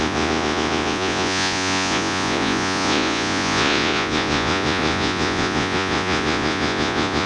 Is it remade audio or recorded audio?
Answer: remade